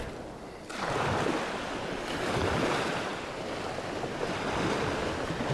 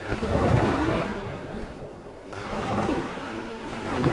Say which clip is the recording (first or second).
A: first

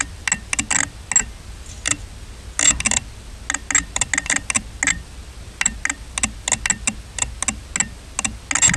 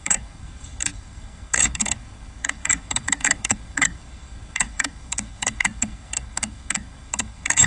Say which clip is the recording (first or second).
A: first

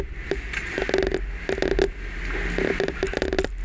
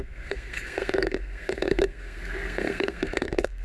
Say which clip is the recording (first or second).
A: first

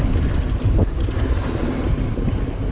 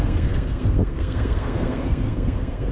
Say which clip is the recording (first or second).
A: first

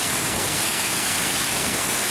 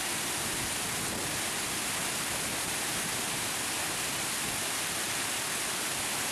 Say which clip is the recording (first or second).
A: second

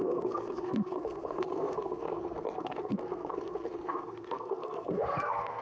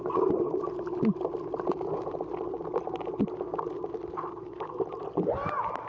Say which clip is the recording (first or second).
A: second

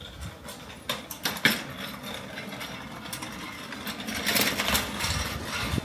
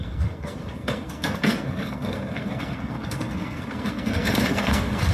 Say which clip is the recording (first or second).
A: first